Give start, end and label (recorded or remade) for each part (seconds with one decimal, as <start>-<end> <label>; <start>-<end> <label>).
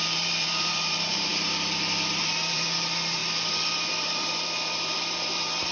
0.0-1.3 remade; 1.3-2.2 recorded; 2.2-3.2 remade; 3.2-3.9 recorded; 3.9-5.7 remade